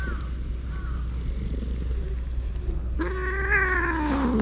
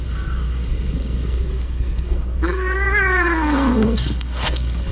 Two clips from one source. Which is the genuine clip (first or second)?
first